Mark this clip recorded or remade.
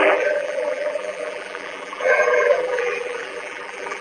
remade